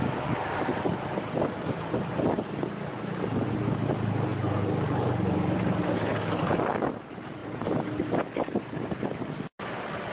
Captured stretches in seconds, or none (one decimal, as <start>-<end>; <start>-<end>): 0.0-10.1